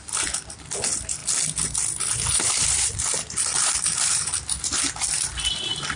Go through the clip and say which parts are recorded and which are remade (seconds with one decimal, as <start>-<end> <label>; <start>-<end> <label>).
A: 0.0-1.2 remade; 1.2-2.4 recorded; 2.4-6.0 remade